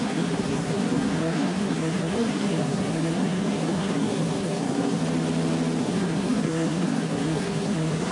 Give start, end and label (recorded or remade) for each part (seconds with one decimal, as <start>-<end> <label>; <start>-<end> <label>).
0.0-5.0 remade; 5.0-5.8 recorded; 5.8-8.1 remade